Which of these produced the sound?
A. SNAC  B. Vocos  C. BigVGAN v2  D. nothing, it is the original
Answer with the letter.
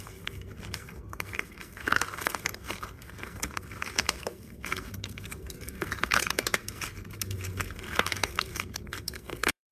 A